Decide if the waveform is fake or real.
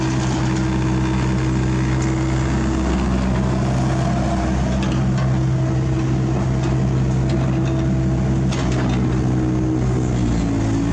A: real